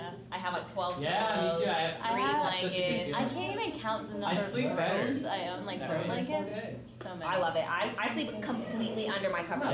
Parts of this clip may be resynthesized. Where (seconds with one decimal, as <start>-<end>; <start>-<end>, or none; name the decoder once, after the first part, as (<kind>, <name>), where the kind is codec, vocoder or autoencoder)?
8.7-9.7 (codec, DAC)